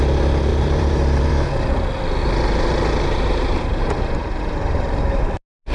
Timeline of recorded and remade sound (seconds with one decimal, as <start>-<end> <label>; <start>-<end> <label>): 0.0-0.5 recorded; 0.5-1.3 remade; 1.3-2.2 recorded; 2.2-5.0 remade; 5.0-5.7 recorded

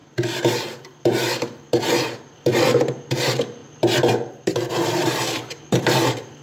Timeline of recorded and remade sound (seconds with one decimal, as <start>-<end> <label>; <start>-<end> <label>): 0.0-6.4 remade

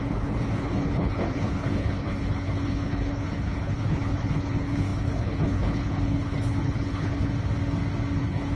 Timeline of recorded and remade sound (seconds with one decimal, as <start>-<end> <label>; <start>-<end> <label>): 0.0-7.3 remade; 7.3-8.2 recorded; 8.2-8.6 remade